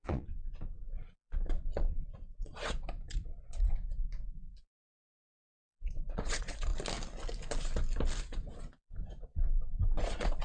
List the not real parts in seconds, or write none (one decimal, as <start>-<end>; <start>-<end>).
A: 0.0-6.7; 8.2-10.4